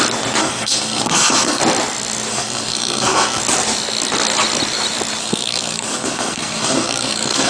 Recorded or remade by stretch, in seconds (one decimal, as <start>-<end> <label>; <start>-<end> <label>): 0.0-0.4 recorded; 0.4-1.6 remade; 1.6-2.3 recorded; 2.3-3.4 remade; 3.4-5.2 recorded; 5.2-7.5 remade